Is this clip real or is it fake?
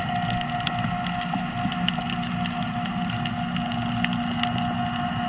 real